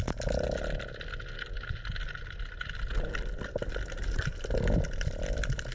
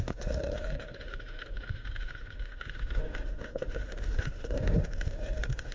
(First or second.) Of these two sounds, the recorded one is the first